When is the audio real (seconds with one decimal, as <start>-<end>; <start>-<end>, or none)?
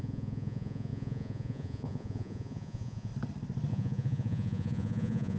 3.1-3.7